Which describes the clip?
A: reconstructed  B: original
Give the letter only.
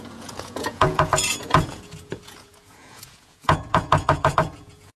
A